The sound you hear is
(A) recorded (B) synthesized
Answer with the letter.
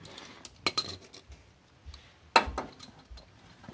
A